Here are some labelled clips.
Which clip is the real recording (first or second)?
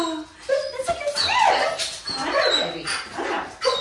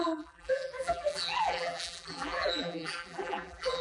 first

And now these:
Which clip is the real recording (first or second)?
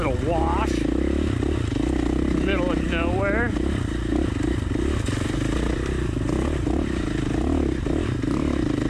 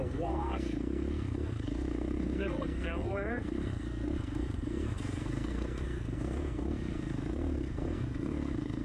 first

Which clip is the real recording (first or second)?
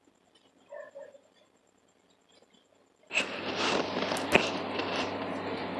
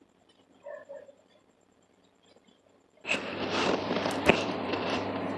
first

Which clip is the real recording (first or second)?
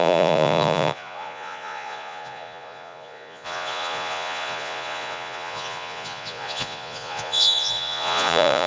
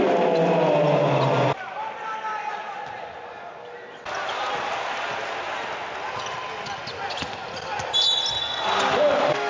second